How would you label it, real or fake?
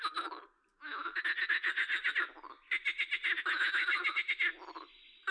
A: real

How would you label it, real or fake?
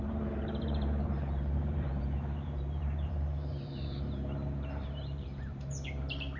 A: fake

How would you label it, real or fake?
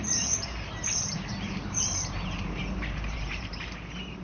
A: fake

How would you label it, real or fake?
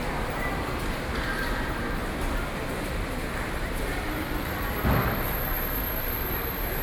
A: fake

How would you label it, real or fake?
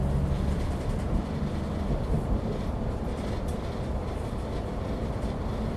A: fake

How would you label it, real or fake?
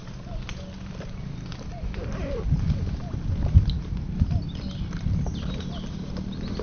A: real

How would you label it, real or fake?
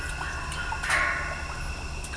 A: real